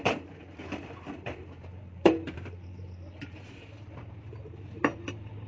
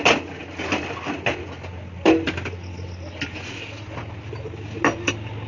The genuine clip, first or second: second